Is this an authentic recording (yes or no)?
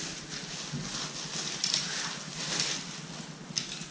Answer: yes